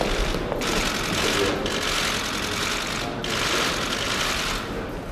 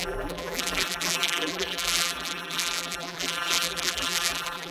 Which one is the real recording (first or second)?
first